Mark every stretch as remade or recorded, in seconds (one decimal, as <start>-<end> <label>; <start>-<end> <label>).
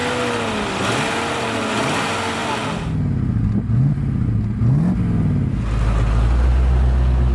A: 0.0-7.3 recorded